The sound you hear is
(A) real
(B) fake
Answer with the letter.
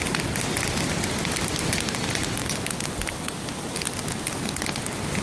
A